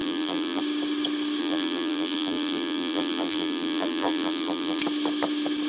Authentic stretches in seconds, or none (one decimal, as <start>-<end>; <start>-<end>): 0.6-1.4; 4.8-5.7